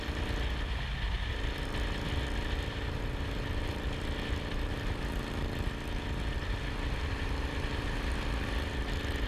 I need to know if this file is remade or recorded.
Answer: recorded